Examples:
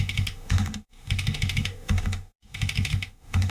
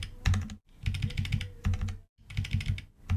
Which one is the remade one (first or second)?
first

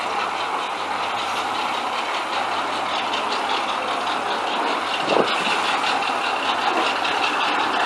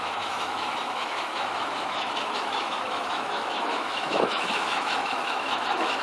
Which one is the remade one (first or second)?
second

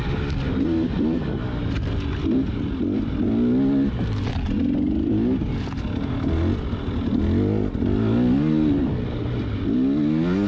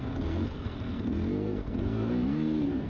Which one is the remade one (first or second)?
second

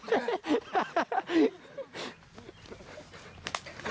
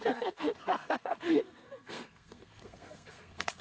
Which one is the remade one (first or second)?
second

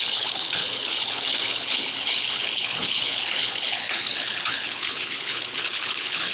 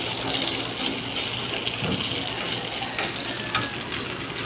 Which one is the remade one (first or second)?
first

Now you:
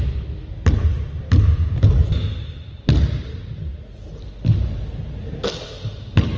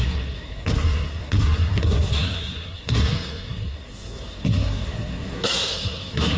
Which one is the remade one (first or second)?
second